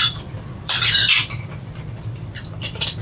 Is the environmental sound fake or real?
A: fake